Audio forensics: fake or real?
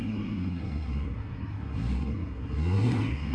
fake